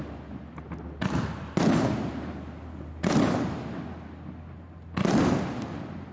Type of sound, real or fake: real